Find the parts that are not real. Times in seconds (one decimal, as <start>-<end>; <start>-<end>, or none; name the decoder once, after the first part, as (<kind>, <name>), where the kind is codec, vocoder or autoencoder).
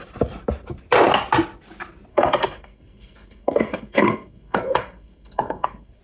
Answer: 2.1-6.0 (codec, SNAC)